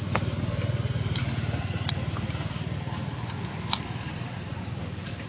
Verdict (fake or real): real